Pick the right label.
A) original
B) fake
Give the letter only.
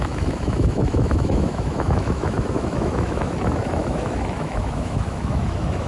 B